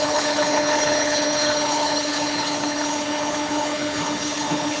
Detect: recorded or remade remade